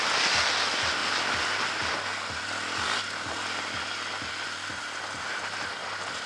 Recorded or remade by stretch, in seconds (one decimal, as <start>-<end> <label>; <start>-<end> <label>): 0.0-6.3 recorded